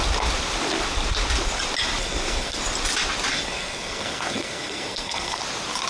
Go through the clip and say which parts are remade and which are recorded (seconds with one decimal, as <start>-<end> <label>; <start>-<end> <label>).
0.0-2.0 recorded; 2.0-2.6 remade; 2.6-3.3 recorded; 3.3-5.4 remade; 5.4-5.9 recorded